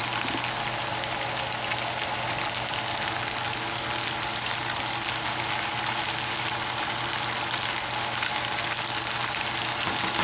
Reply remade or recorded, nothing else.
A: recorded